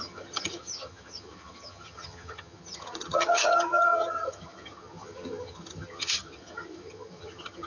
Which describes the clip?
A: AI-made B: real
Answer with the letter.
A